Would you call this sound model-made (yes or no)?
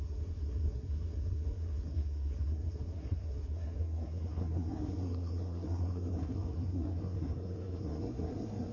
yes